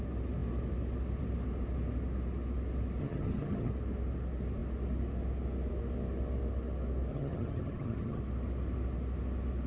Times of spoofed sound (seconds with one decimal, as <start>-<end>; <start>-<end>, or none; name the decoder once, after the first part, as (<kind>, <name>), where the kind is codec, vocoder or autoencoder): 3.0-3.7 (vocoder, HiFi-GAN); 7.1-8.2